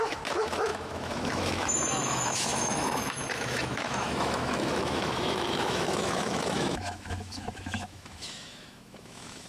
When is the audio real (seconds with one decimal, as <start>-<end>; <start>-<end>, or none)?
none